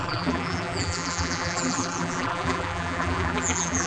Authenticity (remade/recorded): remade